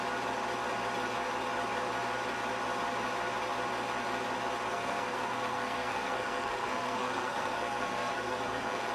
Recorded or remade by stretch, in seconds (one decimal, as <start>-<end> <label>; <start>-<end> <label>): 0.0-4.7 recorded; 4.7-8.9 remade